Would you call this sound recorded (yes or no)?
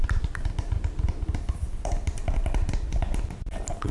yes